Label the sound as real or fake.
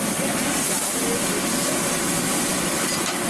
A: real